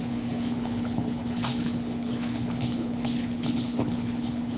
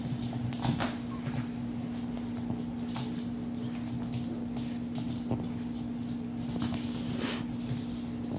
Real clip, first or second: second